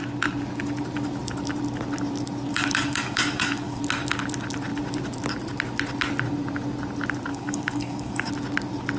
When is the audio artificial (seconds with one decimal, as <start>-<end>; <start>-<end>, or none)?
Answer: 2.5-3.8; 7.3-8.3